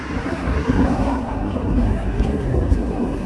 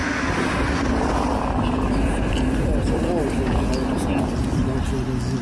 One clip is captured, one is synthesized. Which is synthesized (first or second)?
first